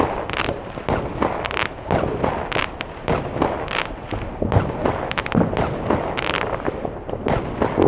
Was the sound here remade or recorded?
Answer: recorded